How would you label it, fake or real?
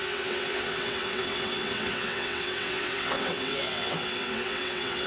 fake